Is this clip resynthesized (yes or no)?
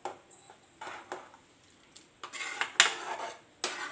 no